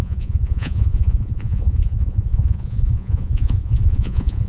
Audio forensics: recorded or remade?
remade